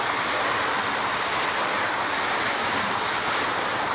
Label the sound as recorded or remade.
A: recorded